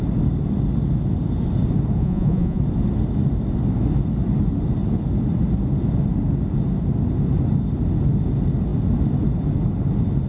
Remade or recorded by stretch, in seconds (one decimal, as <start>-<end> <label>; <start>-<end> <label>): 0.0-2.0 recorded; 2.0-2.6 remade; 2.6-10.3 recorded